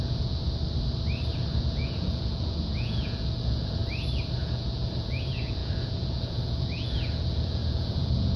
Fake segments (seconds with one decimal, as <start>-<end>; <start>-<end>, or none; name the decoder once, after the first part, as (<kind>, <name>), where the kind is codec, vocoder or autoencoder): 0.0-0.4 (vocoder, Vocos); 1.6-3.8; 4.4-8.4